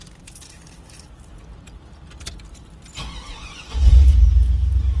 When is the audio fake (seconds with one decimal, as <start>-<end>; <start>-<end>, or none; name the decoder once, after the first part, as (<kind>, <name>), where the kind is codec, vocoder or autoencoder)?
3.3-3.8 (vocoder, Vocos)